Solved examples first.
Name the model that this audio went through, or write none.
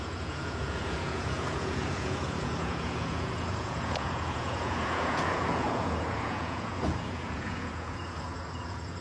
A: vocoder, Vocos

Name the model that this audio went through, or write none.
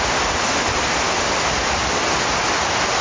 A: none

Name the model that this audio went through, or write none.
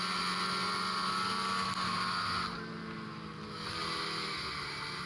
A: none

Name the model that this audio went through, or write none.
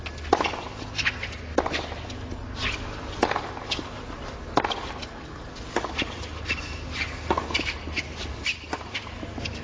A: none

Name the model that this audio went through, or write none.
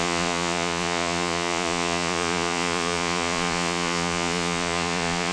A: vocoder, Vocos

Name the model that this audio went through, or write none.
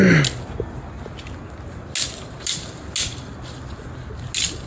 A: none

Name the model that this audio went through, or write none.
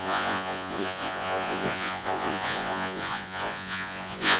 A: vocoder, Vocos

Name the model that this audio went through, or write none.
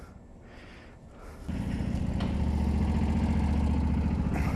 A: none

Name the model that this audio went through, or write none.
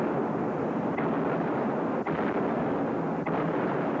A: none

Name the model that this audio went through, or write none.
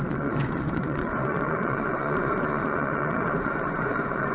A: vocoder, Vocos